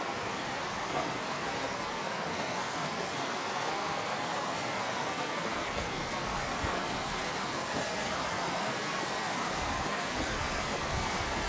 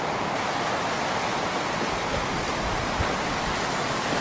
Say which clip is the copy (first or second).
first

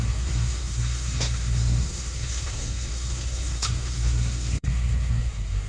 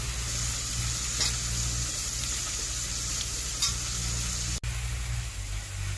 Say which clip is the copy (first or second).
first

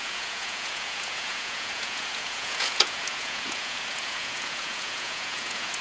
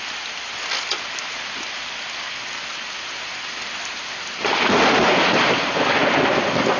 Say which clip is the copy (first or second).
first